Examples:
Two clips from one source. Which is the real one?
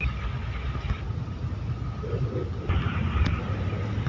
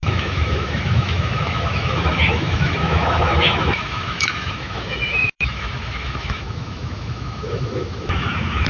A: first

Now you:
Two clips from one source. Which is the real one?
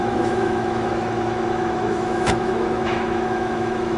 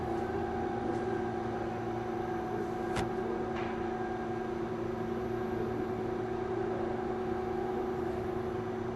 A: second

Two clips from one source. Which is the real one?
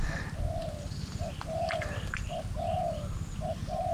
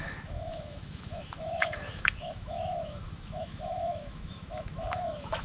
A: first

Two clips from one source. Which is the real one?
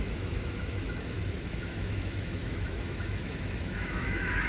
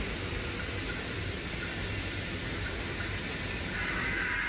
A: second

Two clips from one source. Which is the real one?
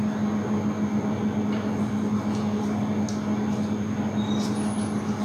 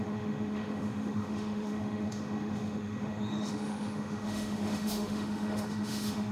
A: first